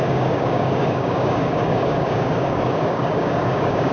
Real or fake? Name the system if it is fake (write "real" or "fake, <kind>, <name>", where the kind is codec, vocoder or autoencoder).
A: fake, codec, DAC